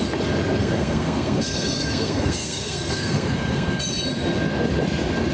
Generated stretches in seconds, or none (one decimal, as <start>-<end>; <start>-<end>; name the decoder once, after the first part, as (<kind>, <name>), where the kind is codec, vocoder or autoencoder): 0.6-3.8 (codec, SNAC)